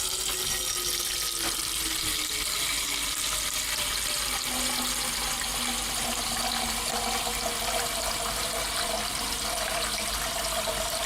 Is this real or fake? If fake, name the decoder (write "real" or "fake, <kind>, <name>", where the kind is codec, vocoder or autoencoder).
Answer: real